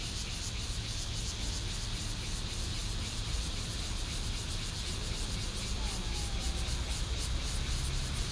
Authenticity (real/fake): real